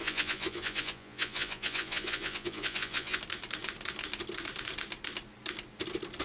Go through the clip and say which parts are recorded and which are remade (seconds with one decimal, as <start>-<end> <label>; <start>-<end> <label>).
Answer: 0.0-3.2 remade; 3.2-6.2 recorded